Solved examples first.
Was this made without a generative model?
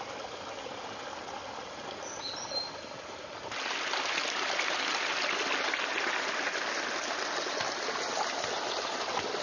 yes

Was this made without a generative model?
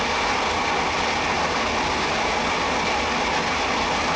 yes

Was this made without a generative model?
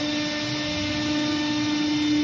yes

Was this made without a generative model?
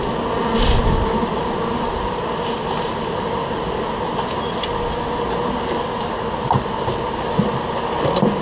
yes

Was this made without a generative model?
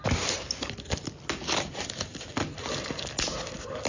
yes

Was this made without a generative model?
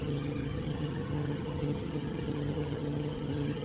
no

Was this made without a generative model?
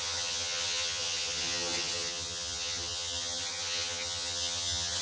no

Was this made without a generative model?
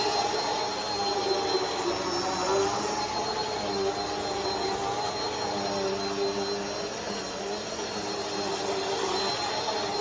yes